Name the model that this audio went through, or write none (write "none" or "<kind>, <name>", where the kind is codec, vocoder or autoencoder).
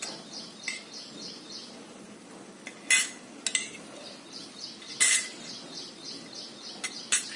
none